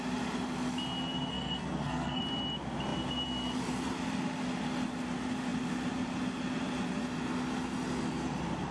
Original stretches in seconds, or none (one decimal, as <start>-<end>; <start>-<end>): 0.0-1.3; 2.2-8.7